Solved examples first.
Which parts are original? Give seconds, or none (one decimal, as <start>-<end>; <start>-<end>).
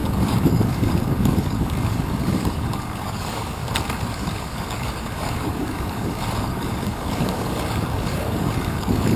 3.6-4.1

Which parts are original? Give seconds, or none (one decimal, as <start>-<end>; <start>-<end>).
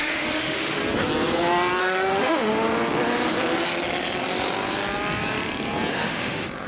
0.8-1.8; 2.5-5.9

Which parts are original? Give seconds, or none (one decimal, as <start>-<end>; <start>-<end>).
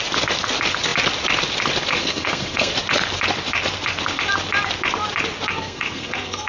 0.0-2.0; 2.7-5.5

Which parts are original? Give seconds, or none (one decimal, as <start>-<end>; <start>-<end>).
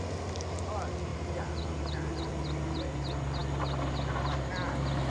0.0-1.1; 2.3-5.1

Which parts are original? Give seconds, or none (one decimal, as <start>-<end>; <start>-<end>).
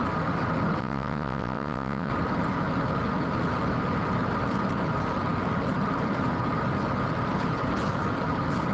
0.0-0.8; 2.1-8.7